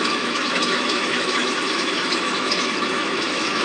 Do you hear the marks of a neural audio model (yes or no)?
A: yes